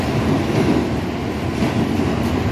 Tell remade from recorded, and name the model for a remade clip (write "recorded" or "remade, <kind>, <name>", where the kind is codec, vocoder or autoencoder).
recorded